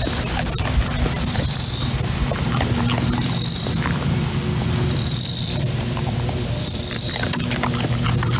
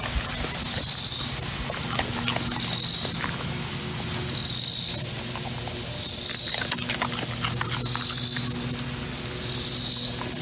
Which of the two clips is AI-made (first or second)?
first